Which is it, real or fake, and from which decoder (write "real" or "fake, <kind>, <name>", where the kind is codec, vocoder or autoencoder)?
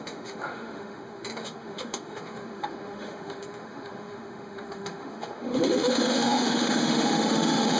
fake, autoencoder, DAC-VAE